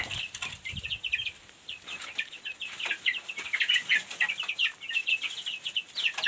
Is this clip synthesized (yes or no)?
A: no